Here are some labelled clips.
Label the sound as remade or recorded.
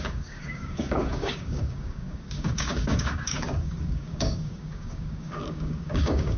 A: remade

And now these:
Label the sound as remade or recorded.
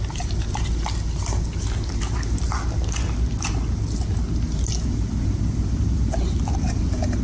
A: recorded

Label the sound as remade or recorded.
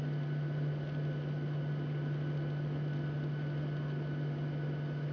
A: recorded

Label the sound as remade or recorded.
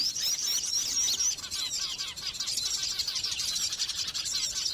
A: recorded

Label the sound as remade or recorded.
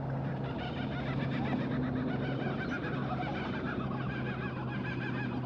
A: recorded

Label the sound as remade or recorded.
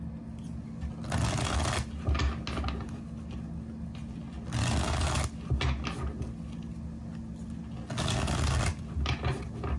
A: recorded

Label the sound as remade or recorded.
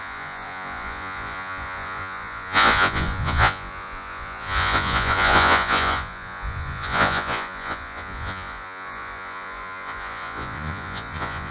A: remade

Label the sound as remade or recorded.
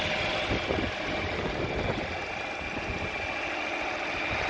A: recorded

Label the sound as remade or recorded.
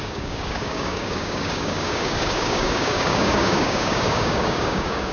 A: remade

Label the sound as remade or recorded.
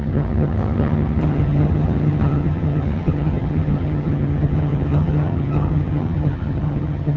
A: remade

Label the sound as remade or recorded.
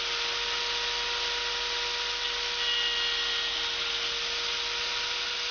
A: recorded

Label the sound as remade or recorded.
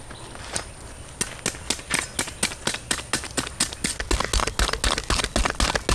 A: recorded